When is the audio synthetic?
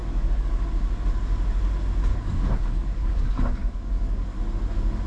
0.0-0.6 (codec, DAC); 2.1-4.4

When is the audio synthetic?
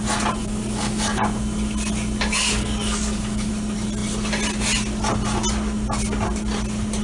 0.4-1.2 (codec, DAC); 2.4-3.5